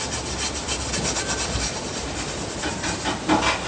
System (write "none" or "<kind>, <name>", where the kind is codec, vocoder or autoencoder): none